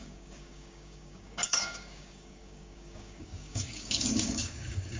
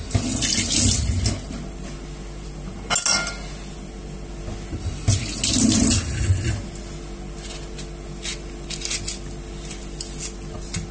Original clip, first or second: second